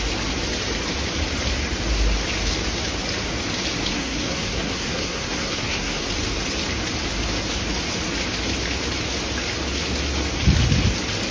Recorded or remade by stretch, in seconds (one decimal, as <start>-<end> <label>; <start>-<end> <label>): 0.0-3.9 recorded; 3.9-6.0 remade; 6.0-11.3 recorded